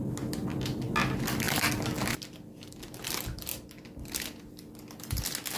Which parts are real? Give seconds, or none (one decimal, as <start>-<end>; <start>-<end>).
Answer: 0.0-1.0; 1.7-5.6